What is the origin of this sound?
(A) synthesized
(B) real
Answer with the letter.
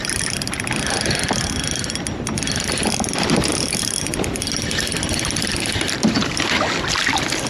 B